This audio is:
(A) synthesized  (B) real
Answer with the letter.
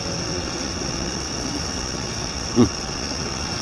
A